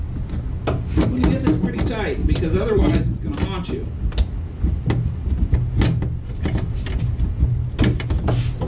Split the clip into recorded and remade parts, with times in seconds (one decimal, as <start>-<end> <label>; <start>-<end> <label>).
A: 0.0-2.2 recorded; 2.2-2.9 remade; 2.9-8.7 recorded